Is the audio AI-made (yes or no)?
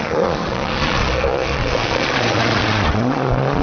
yes